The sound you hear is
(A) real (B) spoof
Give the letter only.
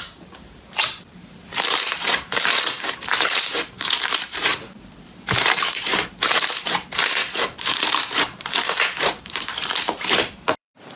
B